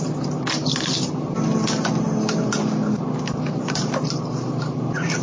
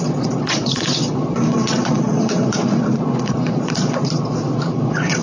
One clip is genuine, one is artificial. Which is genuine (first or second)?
first